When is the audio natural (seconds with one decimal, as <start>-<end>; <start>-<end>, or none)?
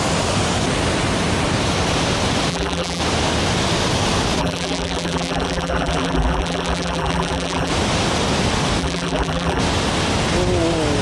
0.0-2.5; 3.0-4.4; 7.7-8.8; 9.6-11.0